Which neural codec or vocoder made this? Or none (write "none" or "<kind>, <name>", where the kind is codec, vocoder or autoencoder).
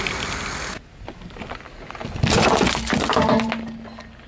none